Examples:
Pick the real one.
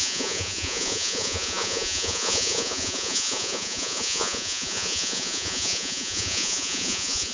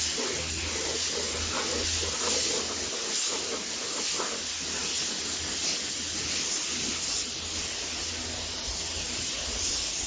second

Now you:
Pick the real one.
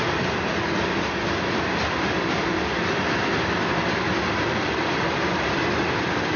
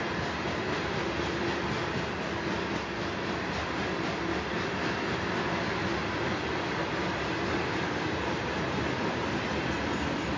second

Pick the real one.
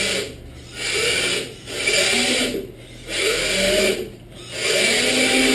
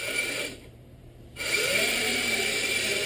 first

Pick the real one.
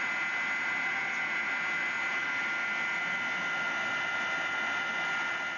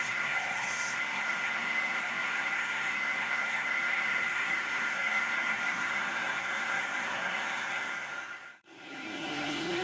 first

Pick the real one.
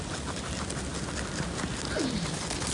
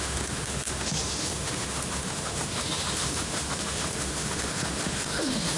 first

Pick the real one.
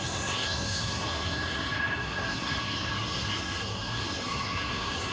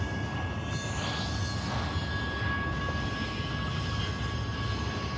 second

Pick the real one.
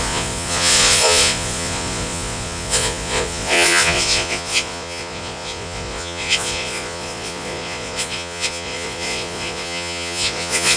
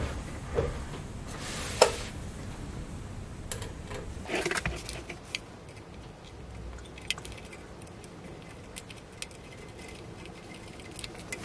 second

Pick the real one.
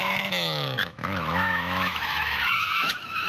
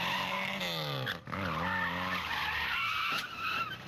second